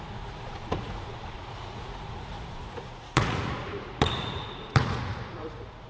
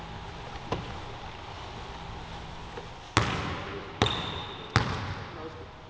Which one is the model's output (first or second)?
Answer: first